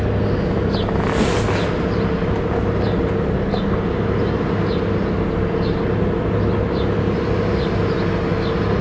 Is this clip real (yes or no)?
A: yes